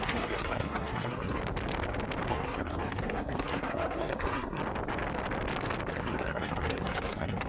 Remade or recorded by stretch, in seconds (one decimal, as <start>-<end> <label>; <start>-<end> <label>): 0.0-1.4 remade; 1.4-2.3 recorded; 2.3-4.6 remade; 4.6-5.9 recorded; 5.9-7.5 remade